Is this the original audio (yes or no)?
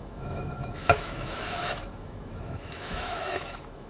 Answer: no